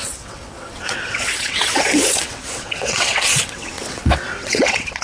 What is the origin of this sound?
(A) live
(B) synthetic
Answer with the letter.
B